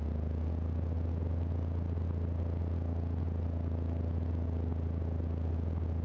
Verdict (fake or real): real